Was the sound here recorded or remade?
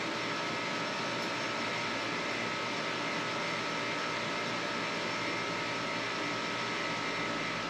recorded